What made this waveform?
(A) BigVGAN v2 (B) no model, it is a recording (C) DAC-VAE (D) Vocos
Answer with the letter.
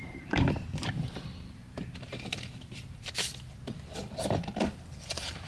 A